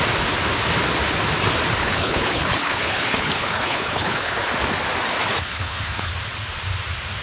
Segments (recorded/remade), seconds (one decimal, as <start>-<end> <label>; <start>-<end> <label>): 0.0-1.8 recorded; 1.8-4.5 remade; 4.5-5.3 recorded; 5.3-6.1 remade; 6.1-7.2 recorded